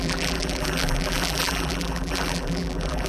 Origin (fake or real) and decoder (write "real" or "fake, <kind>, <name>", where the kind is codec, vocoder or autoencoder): fake, vocoder, BigVGAN v2